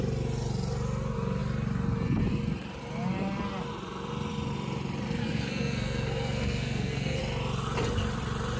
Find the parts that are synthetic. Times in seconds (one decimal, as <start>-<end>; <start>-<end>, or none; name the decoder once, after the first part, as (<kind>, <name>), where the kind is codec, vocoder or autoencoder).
5.2-7.2 (codec, SNAC)